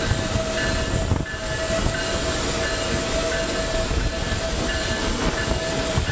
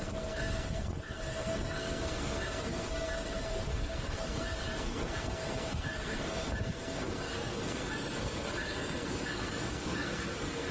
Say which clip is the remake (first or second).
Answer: second